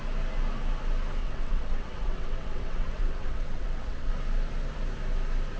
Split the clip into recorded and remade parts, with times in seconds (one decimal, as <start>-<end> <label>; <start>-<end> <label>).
0.0-1.2 recorded; 1.2-4.1 remade; 4.1-5.6 recorded